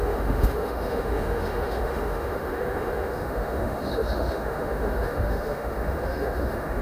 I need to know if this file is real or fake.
fake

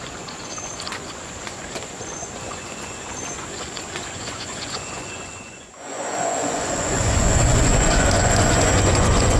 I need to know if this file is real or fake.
fake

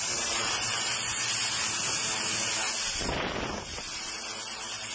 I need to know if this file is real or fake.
real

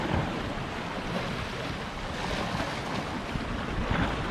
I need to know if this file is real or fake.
real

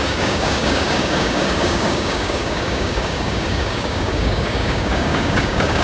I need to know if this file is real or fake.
fake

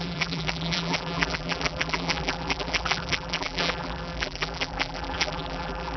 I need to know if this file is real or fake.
fake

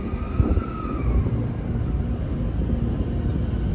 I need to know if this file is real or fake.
real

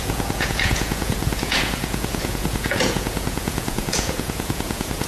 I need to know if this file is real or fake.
fake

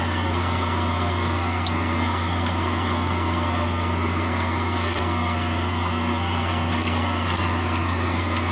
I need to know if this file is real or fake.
fake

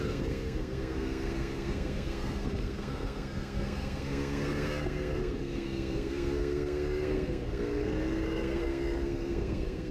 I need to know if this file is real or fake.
fake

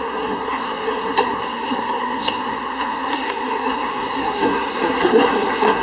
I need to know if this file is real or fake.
fake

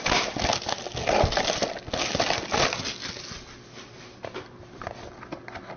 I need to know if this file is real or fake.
real